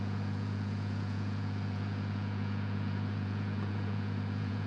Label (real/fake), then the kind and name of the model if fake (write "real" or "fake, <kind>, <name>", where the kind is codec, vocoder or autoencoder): fake, vocoder, Vocos